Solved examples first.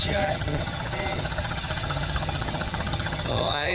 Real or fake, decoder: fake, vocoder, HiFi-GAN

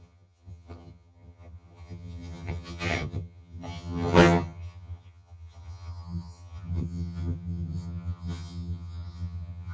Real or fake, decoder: fake, vocoder, HiFi-GAN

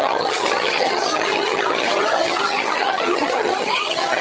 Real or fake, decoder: fake, vocoder, HiFi-GAN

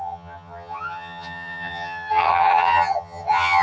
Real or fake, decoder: fake, vocoder, HiFi-GAN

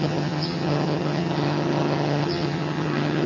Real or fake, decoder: fake, vocoder, HiFi-GAN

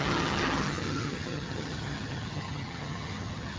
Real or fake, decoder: fake, vocoder, HiFi-GAN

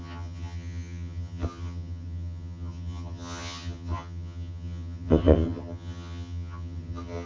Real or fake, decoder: fake, vocoder, HiFi-GAN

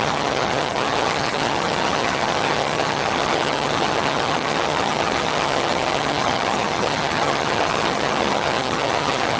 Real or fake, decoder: fake, vocoder, HiFi-GAN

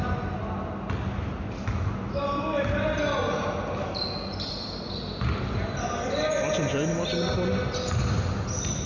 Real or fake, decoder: real